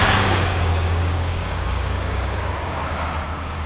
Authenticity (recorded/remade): remade